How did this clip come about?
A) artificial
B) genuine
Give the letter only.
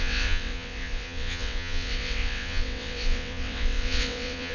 A